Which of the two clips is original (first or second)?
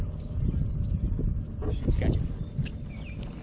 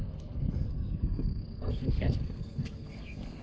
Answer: first